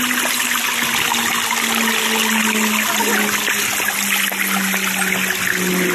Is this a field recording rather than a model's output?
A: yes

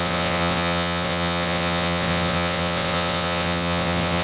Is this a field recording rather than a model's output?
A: no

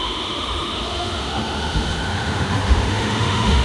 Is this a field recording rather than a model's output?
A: no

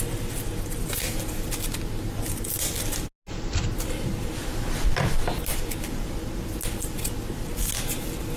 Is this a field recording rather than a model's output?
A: yes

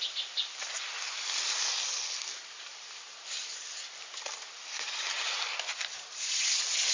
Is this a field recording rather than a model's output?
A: yes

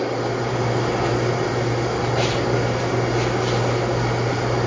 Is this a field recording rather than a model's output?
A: yes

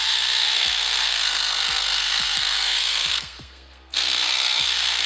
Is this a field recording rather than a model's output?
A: no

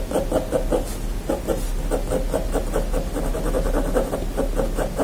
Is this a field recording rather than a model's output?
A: yes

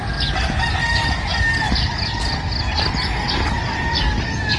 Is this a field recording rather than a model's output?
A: yes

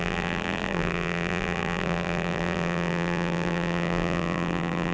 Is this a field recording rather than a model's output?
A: no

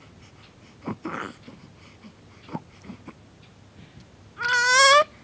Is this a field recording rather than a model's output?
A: yes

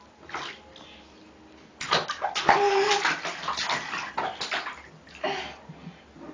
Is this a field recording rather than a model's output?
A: yes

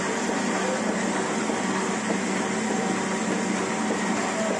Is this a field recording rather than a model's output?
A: yes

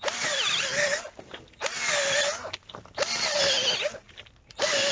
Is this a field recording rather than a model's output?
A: yes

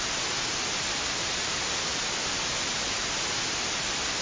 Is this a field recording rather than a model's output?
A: yes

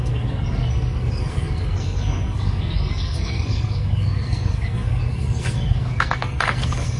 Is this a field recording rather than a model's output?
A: no